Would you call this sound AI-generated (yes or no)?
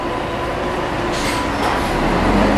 no